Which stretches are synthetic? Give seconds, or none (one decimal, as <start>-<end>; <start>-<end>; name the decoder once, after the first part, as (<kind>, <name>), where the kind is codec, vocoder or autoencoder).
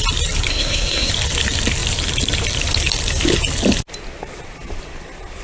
0.5-1.1 (codec, SNAC)